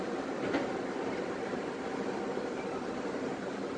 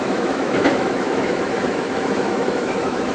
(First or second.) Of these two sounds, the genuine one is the first